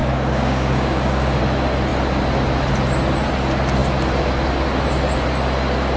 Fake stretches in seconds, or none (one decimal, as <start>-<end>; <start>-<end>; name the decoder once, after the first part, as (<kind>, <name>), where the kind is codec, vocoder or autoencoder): 0.0-1.4 (codec, DAC)